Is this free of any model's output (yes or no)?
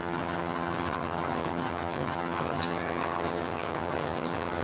no